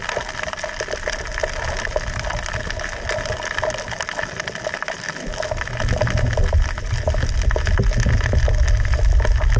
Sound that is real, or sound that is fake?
real